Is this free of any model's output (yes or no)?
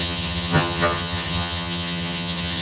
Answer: no